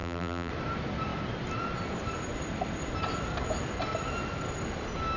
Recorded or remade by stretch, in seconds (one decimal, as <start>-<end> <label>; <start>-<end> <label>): 0.0-0.5 remade; 0.5-5.2 recorded